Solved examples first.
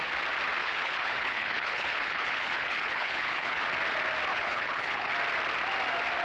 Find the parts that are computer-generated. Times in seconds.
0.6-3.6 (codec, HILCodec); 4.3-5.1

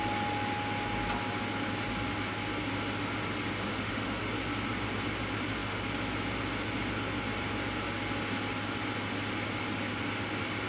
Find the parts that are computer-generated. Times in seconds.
3.7-4.3 (autoencoder, DAC-VAE)

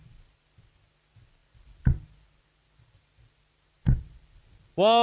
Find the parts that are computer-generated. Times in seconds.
none

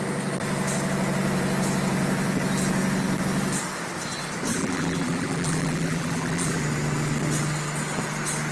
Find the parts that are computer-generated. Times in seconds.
4.5-6.6 (vocoder, BigVGAN v2)

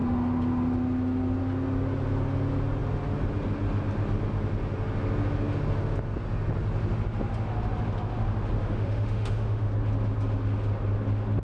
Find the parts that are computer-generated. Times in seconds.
8.6-9.7 (autoencoder, DAC-VAE)